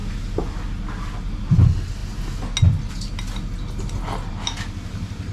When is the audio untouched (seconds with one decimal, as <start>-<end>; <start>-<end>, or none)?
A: 0.0-5.3

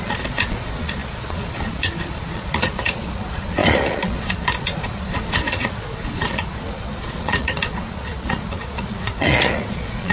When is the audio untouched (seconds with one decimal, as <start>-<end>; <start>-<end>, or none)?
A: none

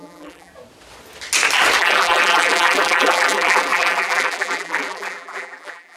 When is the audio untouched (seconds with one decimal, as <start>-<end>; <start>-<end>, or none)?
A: 0.5-1.8

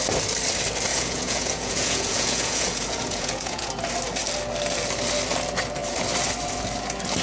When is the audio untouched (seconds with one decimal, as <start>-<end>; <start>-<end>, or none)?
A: 0.0-0.9; 3.7-7.2

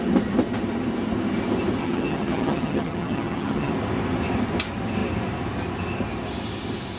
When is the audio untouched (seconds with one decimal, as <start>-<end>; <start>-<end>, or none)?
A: 0.0-1.8; 3.7-7.0

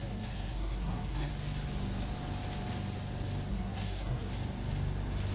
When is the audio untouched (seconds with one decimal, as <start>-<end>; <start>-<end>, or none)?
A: 1.3-3.5; 4.3-5.3

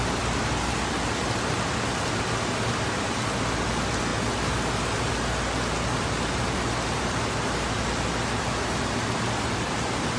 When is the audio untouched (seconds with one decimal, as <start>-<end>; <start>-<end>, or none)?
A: 0.0-10.2